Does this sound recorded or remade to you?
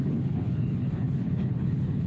remade